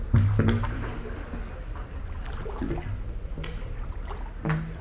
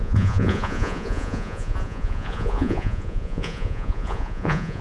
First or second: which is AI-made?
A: second